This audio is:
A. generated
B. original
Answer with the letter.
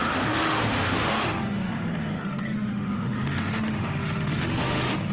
A